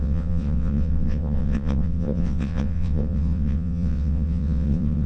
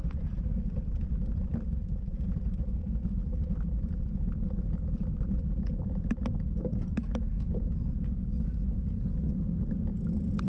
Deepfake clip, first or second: first